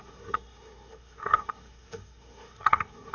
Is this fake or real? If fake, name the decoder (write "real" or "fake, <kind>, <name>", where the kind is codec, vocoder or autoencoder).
fake, codec, SNAC